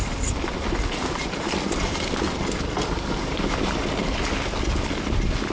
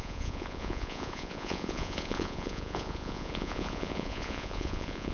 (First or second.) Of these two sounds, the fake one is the second